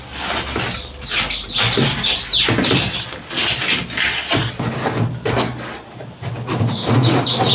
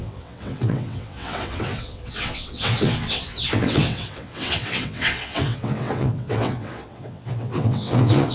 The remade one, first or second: second